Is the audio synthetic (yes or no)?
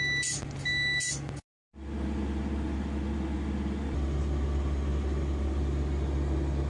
no